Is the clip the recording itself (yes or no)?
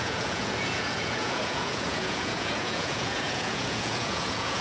no